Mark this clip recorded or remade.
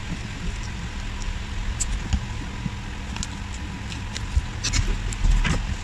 recorded